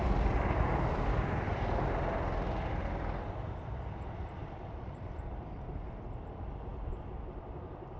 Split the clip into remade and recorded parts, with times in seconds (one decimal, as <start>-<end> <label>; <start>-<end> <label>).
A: 0.0-6.7 remade; 6.7-7.6 recorded; 7.6-8.0 remade